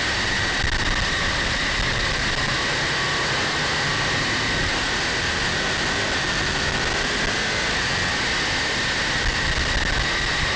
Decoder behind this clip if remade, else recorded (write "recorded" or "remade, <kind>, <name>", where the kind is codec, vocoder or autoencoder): recorded